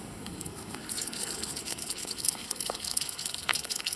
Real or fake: fake